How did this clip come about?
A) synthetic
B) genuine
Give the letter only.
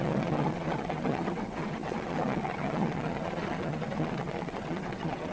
A